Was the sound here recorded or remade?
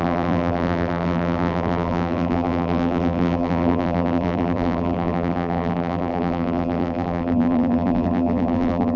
remade